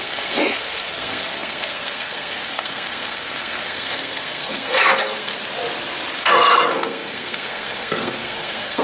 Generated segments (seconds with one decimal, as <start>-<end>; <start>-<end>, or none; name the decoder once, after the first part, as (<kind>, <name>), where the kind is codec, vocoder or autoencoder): 0.0-5.3 (codec, SNAC); 6.2-8.8